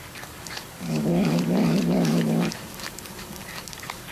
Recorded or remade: remade